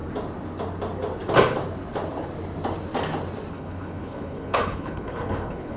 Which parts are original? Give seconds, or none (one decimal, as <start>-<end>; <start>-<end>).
0.0-3.5

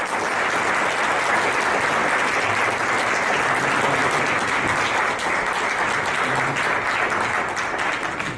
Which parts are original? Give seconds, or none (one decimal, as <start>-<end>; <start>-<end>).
0.0-8.4

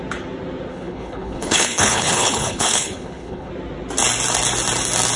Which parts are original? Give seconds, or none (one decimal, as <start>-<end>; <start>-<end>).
0.0-0.7; 3.5-5.2

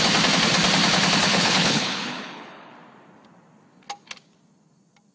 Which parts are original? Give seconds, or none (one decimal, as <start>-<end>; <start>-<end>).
0.0-1.3; 2.7-5.1

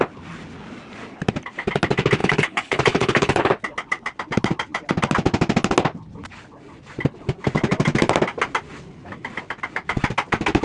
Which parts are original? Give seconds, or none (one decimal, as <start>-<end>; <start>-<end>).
0.0-2.2; 3.4-10.6

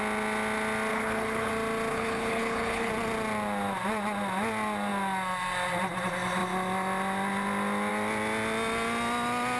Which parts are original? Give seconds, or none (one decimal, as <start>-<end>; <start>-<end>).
0.0-0.9; 1.5-1.9; 2.9-9.6

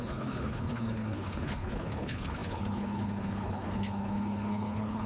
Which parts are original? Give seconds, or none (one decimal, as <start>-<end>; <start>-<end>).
none

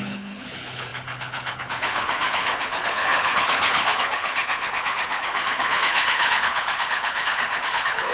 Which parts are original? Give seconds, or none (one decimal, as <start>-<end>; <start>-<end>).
none